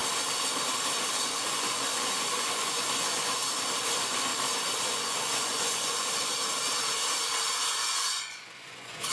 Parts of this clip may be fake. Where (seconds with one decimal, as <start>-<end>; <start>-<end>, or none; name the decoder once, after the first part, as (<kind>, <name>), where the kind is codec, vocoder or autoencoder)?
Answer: 1.2-3.4 (vocoder, Vocos); 3.9-4.3; 4.9-6.3; 7.6-9.1